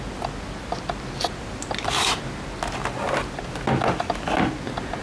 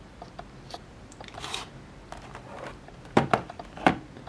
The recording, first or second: first